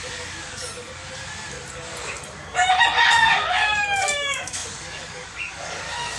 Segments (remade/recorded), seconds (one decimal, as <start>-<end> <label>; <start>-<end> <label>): 0.0-1.0 remade; 1.0-3.1 recorded; 3.1-6.2 remade

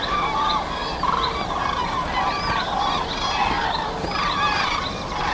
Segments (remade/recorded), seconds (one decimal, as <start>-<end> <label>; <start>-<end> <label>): 0.0-5.3 recorded

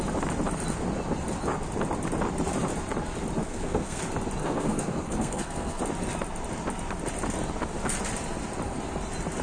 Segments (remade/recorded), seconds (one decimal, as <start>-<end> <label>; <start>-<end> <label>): 0.0-3.4 recorded; 3.4-4.0 remade; 4.0-4.4 recorded; 4.4-5.8 remade; 5.8-9.4 recorded

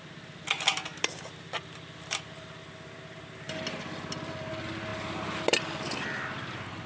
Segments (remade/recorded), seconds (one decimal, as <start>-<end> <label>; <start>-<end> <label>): 0.0-6.9 recorded

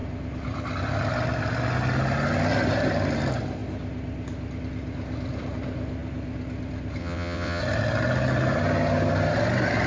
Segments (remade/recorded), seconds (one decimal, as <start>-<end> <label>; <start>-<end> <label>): 0.0-7.0 recorded; 7.0-7.6 remade; 7.6-9.9 recorded

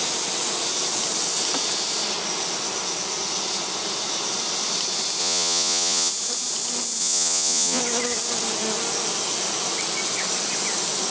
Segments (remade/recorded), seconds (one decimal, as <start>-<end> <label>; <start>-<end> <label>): 0.0-5.2 recorded; 5.2-6.1 remade; 6.1-7.0 recorded; 7.0-7.8 remade; 7.8-11.1 recorded

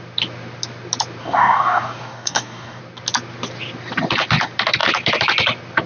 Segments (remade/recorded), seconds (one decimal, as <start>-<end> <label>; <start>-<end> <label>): 0.0-1.2 recorded; 1.2-2.8 remade; 2.8-5.9 recorded

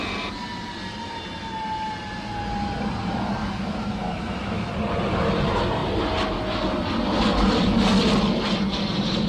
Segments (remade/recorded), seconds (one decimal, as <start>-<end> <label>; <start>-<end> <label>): 0.0-3.4 recorded; 3.4-4.7 remade; 4.7-9.3 recorded